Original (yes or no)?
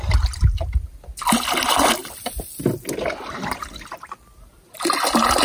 yes